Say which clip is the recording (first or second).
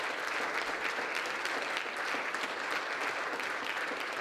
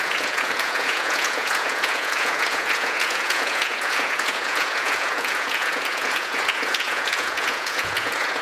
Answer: first